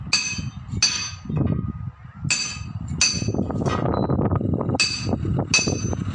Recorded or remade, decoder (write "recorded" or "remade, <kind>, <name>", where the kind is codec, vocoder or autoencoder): recorded